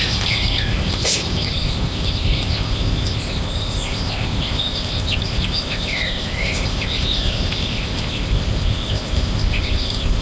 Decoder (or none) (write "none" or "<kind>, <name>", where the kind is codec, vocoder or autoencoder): codec, ZipCodec